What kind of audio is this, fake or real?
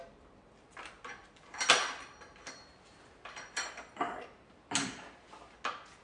real